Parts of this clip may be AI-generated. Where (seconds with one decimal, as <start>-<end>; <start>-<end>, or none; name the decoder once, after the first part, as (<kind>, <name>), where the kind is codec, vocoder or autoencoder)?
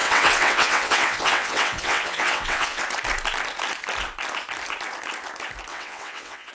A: 0.0-2.8 (vocoder, WaveNeXt); 5.7-6.5